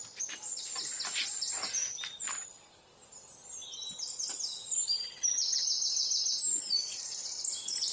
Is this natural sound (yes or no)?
yes